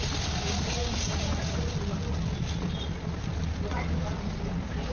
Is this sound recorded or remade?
recorded